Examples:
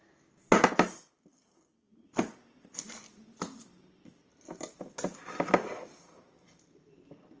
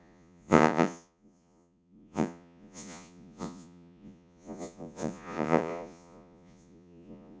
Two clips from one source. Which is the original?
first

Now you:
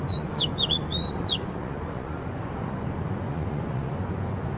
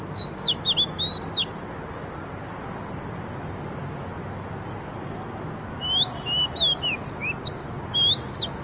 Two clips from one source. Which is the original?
second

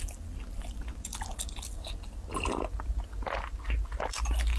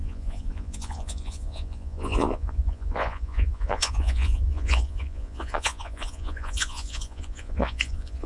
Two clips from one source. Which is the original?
first